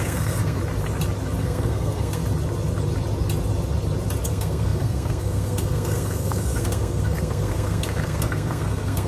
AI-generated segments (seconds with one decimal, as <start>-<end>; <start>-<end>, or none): 0.0-0.6; 1.4-2.2; 4.3-9.1